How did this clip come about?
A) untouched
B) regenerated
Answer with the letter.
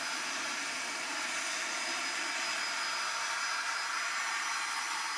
A